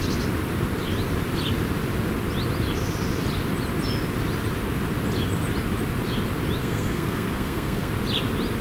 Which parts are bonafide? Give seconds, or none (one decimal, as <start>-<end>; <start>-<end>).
0.0-6.6; 7.9-8.6